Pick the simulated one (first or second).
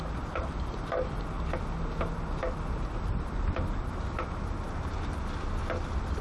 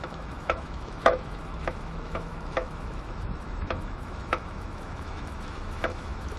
second